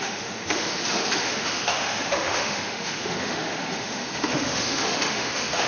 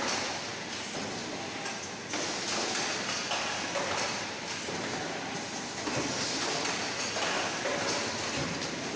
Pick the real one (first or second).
second